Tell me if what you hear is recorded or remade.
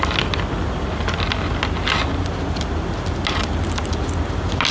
recorded